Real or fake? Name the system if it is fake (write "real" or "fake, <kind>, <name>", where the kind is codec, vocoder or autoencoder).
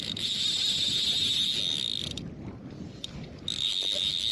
real